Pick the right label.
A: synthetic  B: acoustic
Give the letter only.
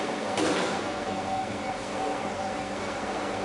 A